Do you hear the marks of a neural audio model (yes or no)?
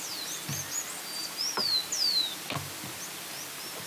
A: no